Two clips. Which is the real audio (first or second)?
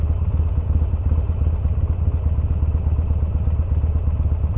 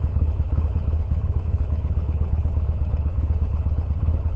first